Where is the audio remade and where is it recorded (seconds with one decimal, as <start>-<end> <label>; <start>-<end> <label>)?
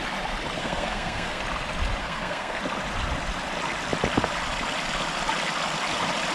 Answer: 0.0-0.6 recorded; 0.6-1.4 remade; 1.4-2.0 recorded; 2.0-2.6 remade; 2.6-6.3 recorded